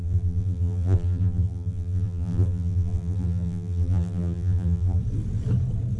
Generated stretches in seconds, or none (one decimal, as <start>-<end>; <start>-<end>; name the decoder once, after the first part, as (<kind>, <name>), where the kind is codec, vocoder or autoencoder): 0.0-5.0 (vocoder, BigVGAN v2)